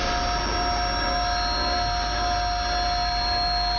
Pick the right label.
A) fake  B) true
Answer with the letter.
B